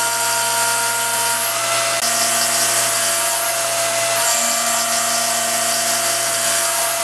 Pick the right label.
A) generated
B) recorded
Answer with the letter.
B